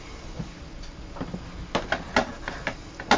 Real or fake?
real